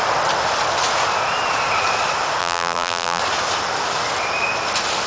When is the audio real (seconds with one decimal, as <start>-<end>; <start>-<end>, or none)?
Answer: 0.0-2.4; 3.2-5.1